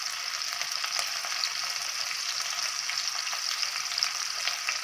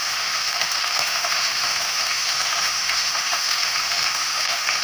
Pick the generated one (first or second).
second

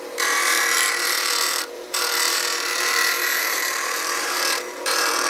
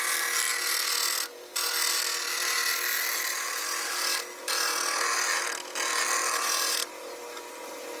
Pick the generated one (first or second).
first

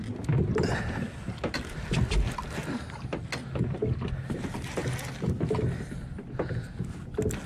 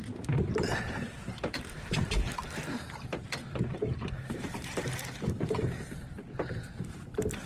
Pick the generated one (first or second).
second